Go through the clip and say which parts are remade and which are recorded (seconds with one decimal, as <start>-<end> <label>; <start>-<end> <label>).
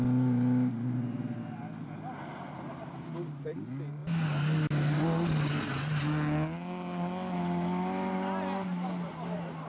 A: 0.0-9.7 recorded